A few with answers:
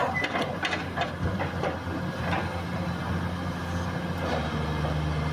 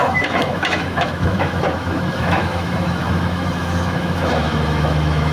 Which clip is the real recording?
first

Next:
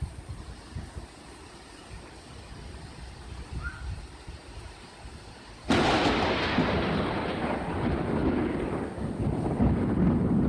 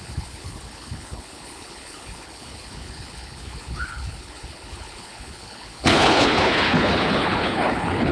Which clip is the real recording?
first